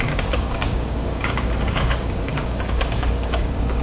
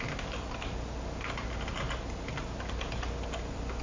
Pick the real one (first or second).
second